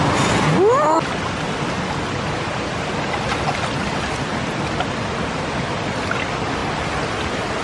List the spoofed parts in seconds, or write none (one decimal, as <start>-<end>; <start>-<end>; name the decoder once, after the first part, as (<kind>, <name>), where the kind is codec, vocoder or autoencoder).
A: none